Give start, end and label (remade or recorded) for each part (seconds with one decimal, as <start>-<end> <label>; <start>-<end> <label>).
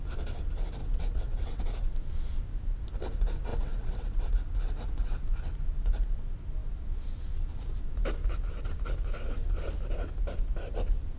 0.0-0.8 recorded; 0.8-1.6 remade; 1.6-3.5 recorded; 3.5-4.3 remade; 4.3-11.2 recorded